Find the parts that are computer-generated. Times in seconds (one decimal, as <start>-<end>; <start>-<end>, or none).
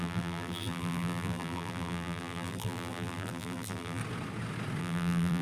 0.0-4.0; 4.8-5.4